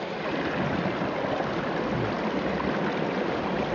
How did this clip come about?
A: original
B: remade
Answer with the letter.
A